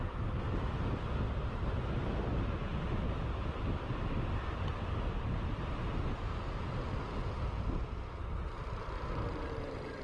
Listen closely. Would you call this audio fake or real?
real